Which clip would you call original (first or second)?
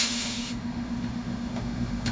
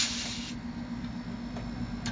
second